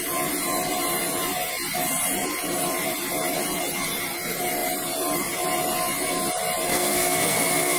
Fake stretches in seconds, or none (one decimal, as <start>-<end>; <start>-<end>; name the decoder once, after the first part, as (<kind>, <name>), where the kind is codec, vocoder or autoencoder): 6.7-7.8 (codec, SNAC)